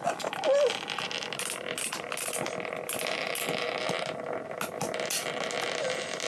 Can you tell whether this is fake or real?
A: real